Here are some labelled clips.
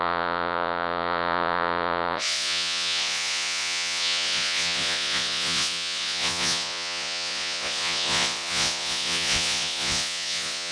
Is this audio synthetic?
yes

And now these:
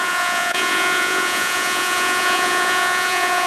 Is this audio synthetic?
yes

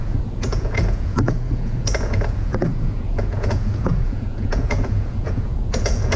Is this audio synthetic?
yes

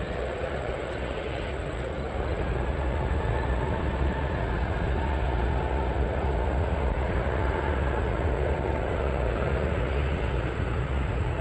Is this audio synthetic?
yes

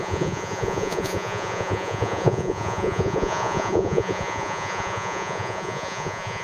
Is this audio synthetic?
yes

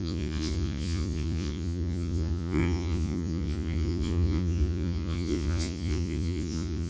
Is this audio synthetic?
yes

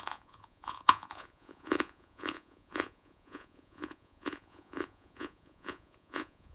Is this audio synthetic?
yes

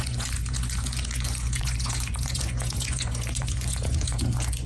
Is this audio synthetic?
yes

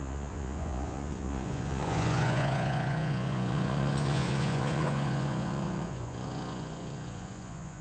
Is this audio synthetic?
yes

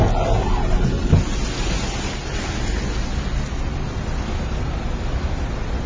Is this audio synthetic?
no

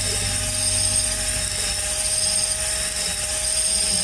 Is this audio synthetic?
no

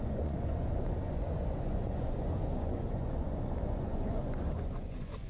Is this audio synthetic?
yes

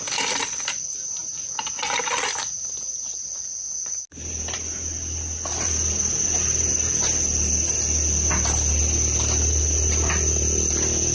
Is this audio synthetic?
no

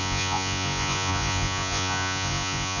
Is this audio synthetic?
yes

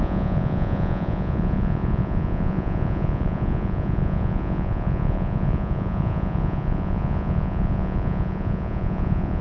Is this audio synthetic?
yes